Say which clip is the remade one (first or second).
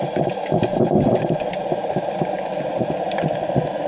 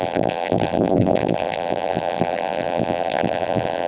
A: second